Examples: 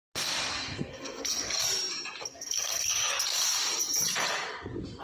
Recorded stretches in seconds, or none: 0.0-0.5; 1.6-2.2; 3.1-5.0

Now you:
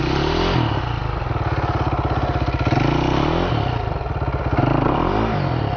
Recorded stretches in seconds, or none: 0.0-5.8

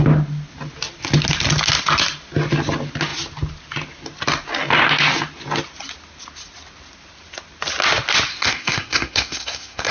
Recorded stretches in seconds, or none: 0.0-8.3

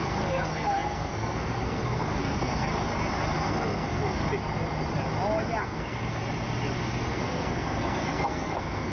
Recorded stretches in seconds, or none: 2.7-3.4; 4.2-5.6; 6.2-7.1

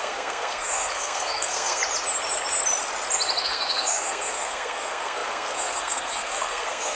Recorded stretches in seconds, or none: 1.8-3.4